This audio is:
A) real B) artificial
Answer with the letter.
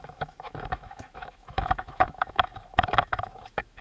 B